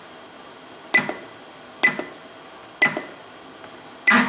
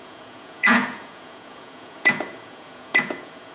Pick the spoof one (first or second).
second